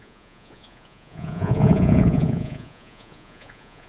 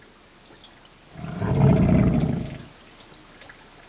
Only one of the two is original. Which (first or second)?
second